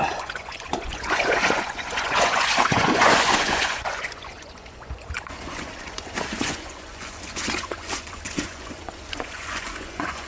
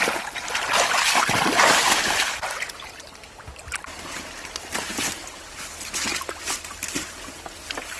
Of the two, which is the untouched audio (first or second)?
second